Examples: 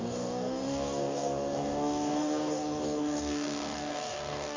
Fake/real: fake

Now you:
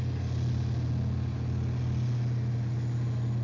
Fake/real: real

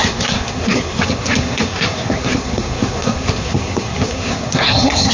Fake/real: fake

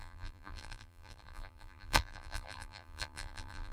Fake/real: fake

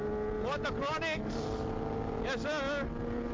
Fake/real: real